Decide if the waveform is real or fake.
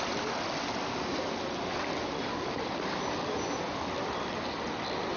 real